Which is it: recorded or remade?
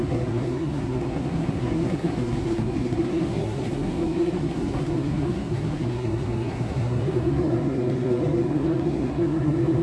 remade